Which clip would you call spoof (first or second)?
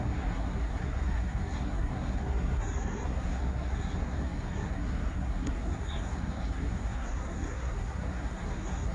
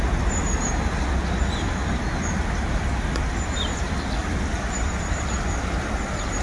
first